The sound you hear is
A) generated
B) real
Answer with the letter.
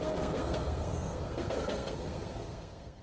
A